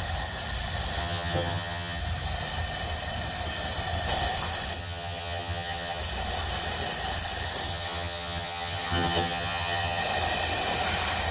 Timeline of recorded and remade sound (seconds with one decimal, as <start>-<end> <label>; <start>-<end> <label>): 0.0-1.0 recorded; 1.0-2.0 remade; 2.0-4.8 recorded; 4.8-6.0 remade; 6.0-7.7 recorded; 7.7-10.0 remade; 10.0-11.3 recorded